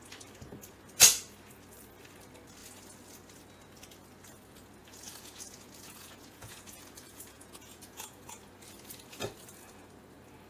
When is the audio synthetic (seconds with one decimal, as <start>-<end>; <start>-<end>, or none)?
4.8-8.2